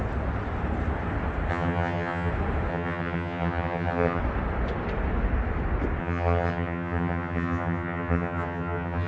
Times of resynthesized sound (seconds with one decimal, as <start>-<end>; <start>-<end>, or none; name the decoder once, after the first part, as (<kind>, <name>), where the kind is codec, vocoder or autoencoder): 1.5-2.3 (vocoder, HiFi-GAN); 2.7-4.2; 6.0-9.1

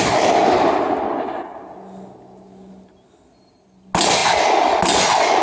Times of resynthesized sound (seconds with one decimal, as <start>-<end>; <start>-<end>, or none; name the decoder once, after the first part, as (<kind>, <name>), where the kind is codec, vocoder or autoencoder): none

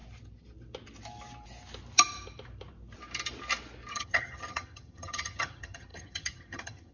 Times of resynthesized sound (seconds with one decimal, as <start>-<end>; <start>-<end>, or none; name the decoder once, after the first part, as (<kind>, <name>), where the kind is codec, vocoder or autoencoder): 3.9-6.9 (vocoder, HiFi-GAN)

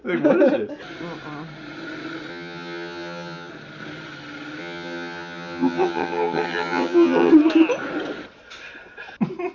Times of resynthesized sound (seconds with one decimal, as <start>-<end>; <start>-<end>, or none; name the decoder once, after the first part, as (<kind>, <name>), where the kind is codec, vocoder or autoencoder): 2.3-3.5 (vocoder, HiFi-GAN); 4.6-7.3

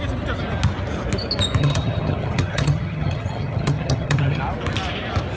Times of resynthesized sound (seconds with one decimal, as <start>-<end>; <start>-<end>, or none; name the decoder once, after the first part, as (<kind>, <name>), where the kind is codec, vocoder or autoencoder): 1.6-4.4 (vocoder, HiFi-GAN)

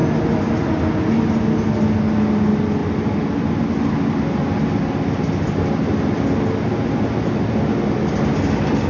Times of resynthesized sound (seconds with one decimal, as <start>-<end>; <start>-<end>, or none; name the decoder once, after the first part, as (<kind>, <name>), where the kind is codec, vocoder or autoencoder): none